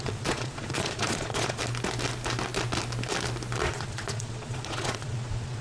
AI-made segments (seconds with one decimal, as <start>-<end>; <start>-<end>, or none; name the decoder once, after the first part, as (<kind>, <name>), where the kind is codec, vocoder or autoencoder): 0.0-1.6 (vocoder, Vocos); 3.7-5.6